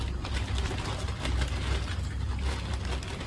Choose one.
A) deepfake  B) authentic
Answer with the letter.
B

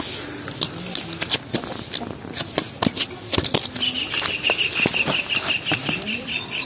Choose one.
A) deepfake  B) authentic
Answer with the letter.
B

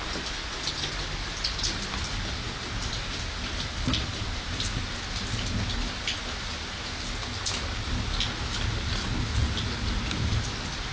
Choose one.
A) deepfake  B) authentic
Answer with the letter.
B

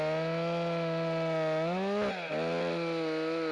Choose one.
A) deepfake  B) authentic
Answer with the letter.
B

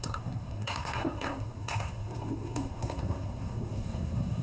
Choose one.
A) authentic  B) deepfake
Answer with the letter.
B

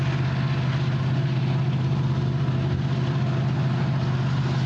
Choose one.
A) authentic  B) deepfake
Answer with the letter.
A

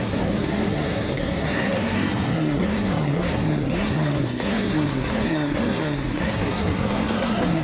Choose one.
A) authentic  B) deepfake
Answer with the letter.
B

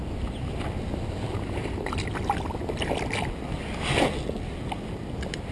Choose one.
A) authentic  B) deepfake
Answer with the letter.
A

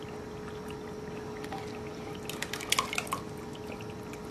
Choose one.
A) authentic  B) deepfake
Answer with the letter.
A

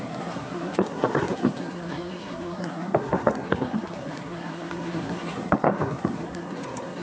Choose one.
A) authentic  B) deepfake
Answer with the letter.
B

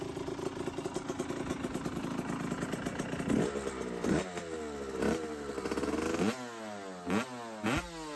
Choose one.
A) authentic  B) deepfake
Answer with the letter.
A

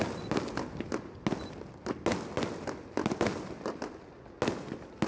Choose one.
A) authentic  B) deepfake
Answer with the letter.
A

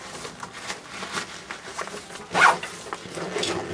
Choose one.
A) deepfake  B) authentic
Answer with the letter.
B